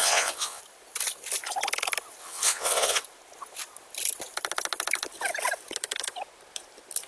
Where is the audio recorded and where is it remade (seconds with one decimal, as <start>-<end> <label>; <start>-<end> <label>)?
0.0-0.6 remade; 0.6-2.2 recorded; 2.2-3.0 remade; 3.0-7.1 recorded